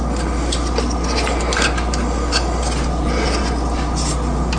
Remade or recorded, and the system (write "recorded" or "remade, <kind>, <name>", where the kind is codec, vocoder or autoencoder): recorded